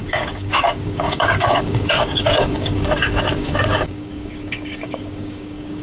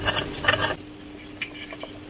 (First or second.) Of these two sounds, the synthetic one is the first